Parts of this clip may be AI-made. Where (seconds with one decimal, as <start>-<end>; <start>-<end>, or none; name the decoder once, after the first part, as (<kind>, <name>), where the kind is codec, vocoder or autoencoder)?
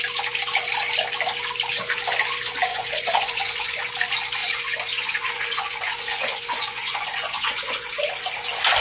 2.7-3.8 (vocoder, Vocos); 4.4-7.9